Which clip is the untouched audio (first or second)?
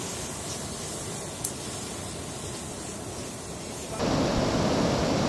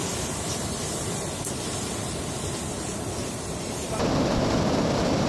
first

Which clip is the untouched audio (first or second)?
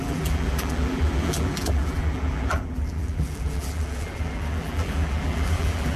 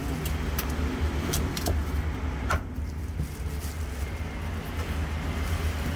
second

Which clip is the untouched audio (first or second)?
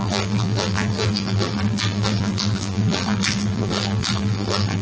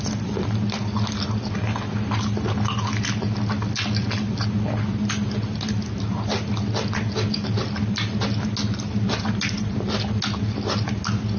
second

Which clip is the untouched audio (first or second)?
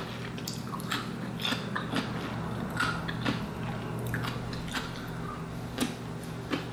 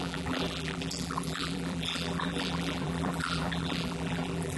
first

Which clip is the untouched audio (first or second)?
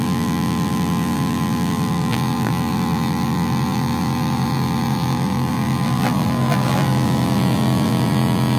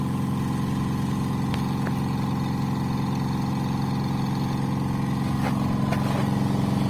second